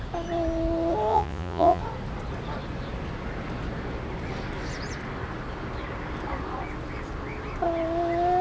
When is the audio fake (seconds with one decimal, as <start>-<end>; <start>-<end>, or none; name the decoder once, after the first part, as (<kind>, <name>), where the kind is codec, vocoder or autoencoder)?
1.1-1.8 (vocoder, Vocos)